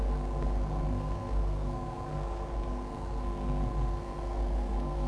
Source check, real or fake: fake